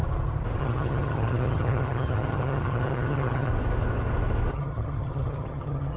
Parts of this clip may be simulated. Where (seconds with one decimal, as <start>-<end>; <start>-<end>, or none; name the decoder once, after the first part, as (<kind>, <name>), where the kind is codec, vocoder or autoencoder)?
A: 0.6-3.5 (vocoder, HiFi-GAN); 4.5-6.0